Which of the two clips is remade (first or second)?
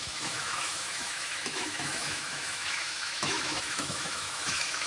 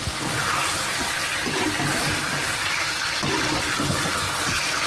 first